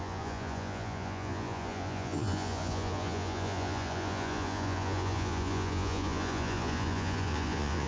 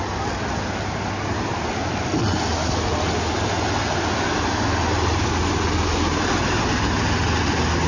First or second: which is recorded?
second